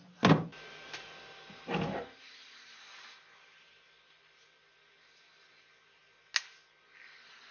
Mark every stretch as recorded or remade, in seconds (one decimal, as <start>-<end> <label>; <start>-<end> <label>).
0.0-7.5 recorded